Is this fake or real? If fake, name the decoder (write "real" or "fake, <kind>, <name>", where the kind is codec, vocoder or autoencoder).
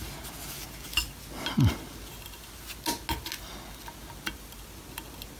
real